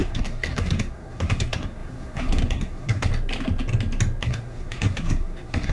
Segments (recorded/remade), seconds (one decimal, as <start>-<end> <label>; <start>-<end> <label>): 0.0-3.1 remade; 3.1-4.2 recorded; 4.2-5.7 remade